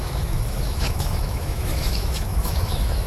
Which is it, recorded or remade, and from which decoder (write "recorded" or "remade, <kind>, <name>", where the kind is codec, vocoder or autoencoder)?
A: remade, autoencoder, DAC-VAE